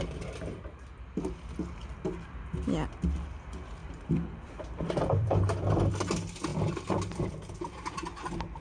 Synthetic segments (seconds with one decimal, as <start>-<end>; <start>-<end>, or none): 3.8-5.9; 6.5-7.3